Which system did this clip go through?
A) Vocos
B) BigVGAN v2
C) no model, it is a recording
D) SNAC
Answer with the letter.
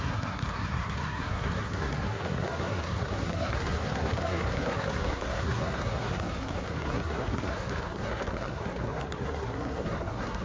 D